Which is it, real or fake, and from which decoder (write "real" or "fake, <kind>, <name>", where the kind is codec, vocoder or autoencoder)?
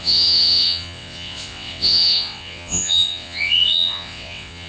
fake, vocoder, WaveNeXt